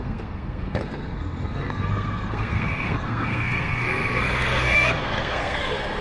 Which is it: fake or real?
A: fake